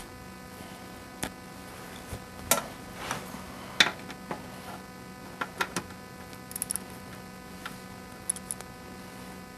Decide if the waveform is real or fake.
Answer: real